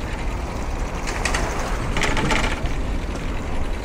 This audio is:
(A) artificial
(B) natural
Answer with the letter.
B